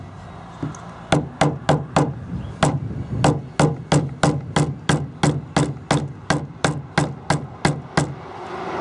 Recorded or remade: recorded